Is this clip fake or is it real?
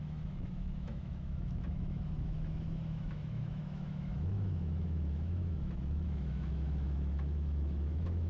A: fake